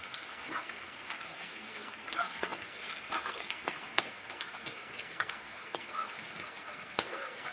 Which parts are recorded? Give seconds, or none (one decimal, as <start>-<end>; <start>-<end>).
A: none

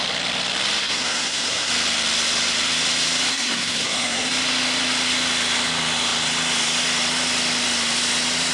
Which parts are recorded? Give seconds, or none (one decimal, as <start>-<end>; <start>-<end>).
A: 0.0-0.8; 1.7-3.3; 4.3-8.5

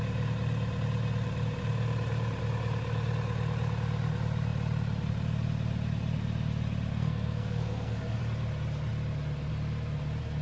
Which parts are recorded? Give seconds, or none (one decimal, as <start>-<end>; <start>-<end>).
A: 0.0-6.9; 8.2-10.4

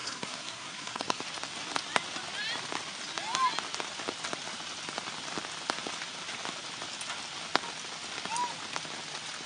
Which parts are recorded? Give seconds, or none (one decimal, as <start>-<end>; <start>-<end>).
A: 1.2-9.5

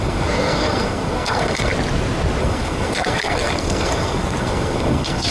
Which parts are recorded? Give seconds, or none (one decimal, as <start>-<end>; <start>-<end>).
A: 1.7-2.4